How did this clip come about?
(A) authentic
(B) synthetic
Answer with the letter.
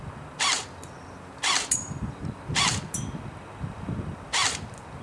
A